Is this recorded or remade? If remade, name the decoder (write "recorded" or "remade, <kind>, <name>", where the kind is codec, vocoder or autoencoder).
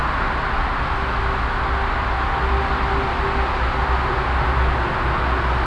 recorded